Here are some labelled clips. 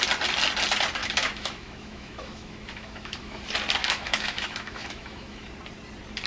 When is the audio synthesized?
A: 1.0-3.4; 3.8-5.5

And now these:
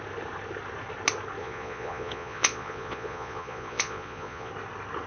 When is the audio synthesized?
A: 1.4-4.5

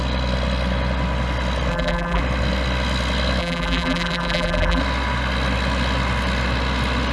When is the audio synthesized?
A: 1.7-2.2; 3.4-4.8

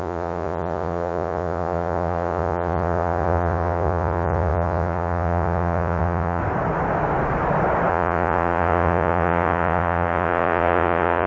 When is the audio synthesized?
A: 0.0-6.4; 7.9-11.3

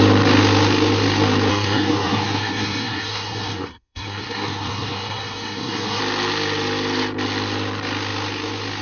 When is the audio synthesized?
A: 1.5-6.0

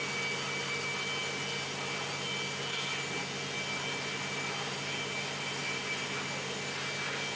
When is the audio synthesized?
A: none